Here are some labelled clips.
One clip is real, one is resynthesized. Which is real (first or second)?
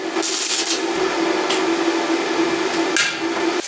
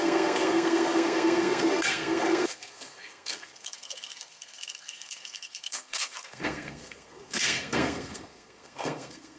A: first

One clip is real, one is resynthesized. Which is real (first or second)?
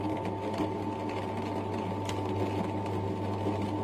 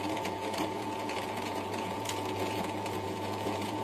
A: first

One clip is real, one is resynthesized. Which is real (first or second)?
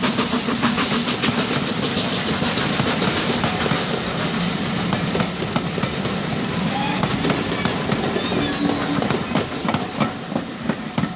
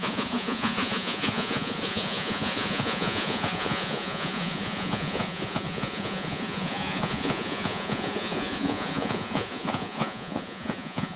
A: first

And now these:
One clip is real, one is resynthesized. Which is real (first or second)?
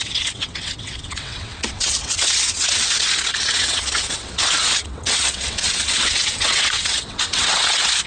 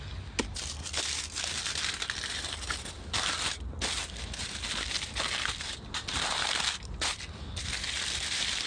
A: second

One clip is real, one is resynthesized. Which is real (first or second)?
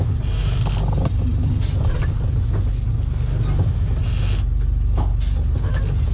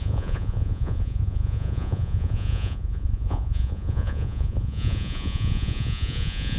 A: first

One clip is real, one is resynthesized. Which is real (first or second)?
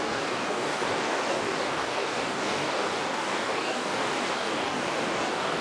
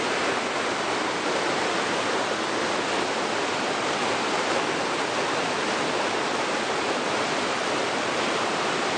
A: second